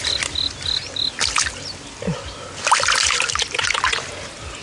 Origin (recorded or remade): recorded